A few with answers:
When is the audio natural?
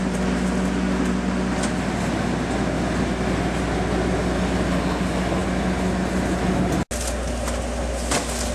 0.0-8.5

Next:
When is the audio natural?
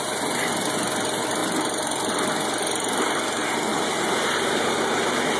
0.0-1.4; 2.1-3.7; 4.6-5.4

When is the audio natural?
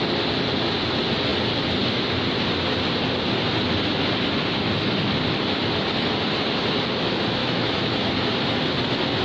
0.0-7.4; 8.1-9.2